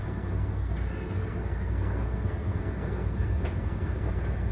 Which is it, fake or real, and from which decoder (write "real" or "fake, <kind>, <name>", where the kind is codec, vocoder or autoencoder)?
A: fake, codec, SNAC